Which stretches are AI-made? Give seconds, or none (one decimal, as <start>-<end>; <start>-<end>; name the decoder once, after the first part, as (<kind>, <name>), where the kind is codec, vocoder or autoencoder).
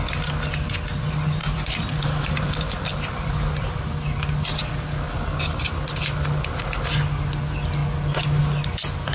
1.4-4.6 (vocoder, BigVGAN v2)